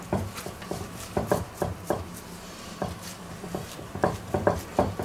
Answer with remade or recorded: remade